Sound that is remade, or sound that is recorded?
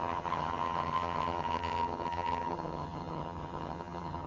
remade